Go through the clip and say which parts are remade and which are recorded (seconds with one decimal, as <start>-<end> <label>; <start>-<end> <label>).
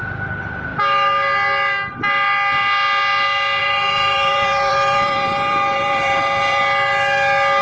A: 0.0-3.6 recorded; 3.6-6.6 remade; 6.6-7.6 recorded